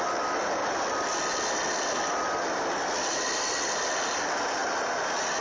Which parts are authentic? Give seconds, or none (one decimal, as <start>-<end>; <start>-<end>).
0.0-5.4